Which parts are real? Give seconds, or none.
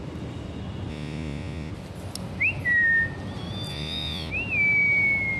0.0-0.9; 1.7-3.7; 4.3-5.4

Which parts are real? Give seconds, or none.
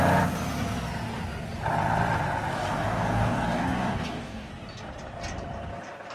0.0-2.5; 4.5-6.1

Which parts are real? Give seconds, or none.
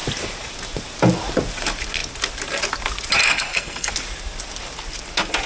0.0-3.2; 3.9-5.5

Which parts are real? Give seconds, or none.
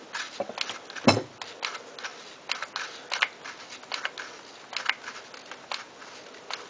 0.0-6.7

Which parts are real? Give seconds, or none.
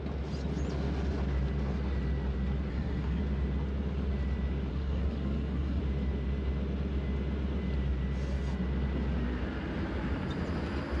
0.0-2.7; 3.2-4.7; 5.8-11.0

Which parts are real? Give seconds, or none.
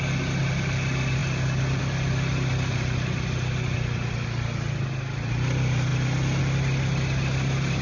0.0-7.8